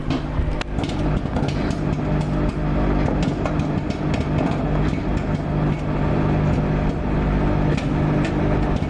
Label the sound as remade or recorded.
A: recorded